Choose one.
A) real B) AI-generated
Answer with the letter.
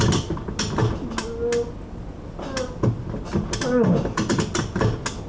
A